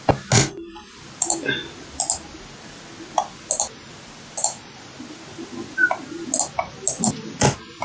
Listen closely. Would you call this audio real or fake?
real